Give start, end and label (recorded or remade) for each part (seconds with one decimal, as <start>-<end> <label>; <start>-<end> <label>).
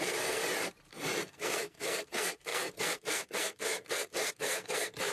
0.0-0.4 remade; 0.4-1.2 recorded; 1.2-5.1 remade